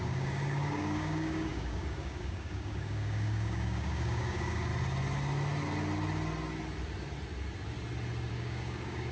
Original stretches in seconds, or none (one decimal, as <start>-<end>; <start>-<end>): 4.7-8.3